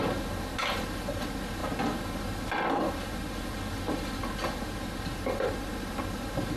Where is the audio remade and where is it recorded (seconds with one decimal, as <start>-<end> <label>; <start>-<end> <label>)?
0.0-6.6 recorded